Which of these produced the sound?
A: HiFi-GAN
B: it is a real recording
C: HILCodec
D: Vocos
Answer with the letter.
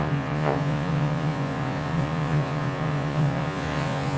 D